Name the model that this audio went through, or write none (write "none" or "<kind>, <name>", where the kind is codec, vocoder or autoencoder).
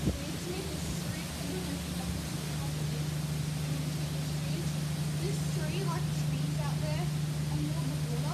none